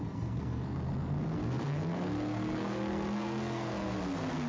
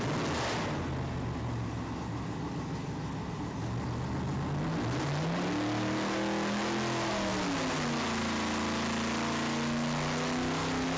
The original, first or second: second